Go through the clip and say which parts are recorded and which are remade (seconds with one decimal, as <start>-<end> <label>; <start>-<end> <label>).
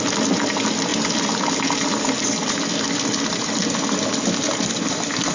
0.0-5.3 recorded